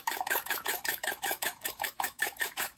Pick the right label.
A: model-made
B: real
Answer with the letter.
A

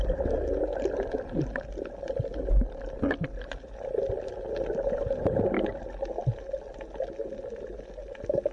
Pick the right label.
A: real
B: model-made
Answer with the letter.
A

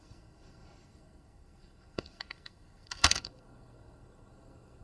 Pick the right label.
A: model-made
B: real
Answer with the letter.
A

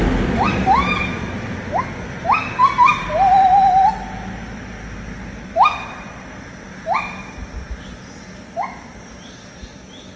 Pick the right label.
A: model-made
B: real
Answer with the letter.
B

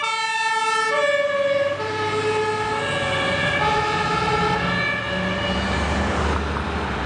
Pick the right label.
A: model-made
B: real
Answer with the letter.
B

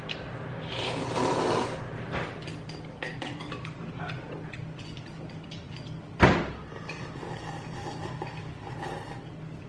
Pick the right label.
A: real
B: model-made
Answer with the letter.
B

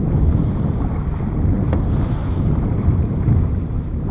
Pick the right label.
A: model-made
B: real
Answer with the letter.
B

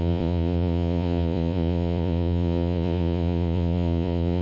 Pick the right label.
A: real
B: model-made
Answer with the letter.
B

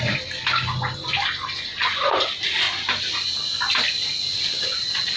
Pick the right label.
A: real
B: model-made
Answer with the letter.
A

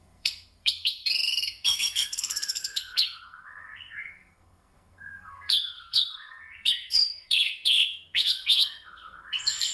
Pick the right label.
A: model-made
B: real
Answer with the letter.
A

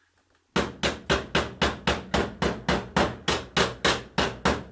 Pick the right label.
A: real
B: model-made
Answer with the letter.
A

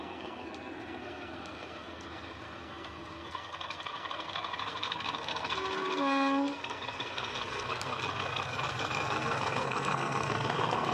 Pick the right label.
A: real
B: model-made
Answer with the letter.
B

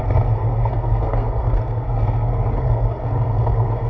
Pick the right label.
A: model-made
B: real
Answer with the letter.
A